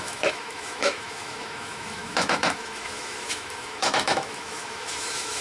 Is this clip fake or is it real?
fake